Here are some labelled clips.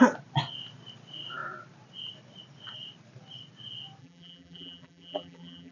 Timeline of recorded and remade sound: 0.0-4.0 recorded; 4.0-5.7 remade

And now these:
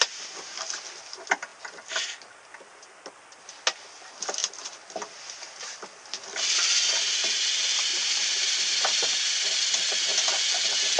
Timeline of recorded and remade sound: 0.0-7.9 recorded; 7.9-8.6 remade; 8.6-11.0 recorded